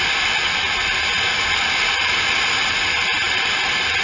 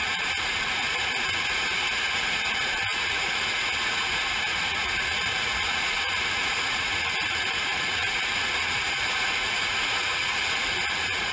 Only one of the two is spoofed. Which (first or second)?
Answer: second